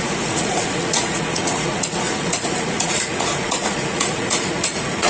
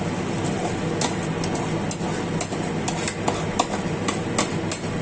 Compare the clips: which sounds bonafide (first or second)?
second